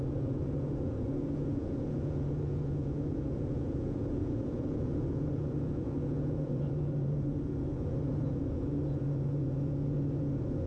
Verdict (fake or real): fake